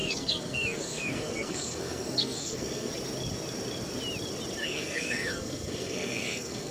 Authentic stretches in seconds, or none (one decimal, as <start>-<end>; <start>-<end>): 2.9-4.6